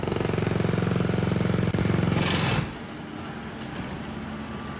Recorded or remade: recorded